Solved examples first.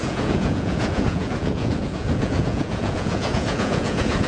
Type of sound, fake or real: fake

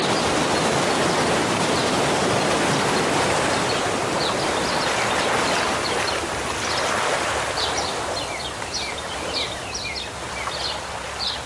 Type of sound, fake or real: real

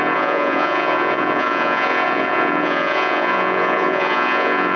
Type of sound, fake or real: fake